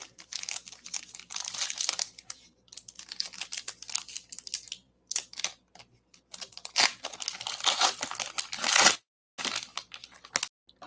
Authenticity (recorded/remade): recorded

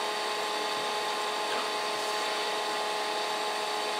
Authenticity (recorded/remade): recorded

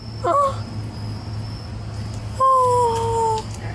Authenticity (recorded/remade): recorded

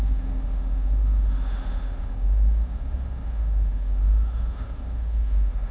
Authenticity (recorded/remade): remade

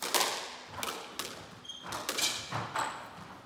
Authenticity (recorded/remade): recorded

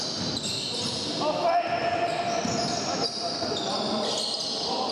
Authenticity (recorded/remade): recorded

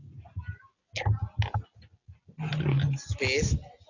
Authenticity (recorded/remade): recorded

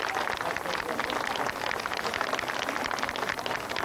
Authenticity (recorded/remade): remade